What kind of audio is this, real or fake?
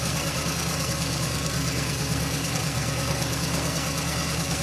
fake